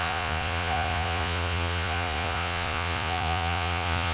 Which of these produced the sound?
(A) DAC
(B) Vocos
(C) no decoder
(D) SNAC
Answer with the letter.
B